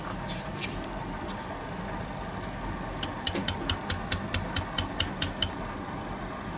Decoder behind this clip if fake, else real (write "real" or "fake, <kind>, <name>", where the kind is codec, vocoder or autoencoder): real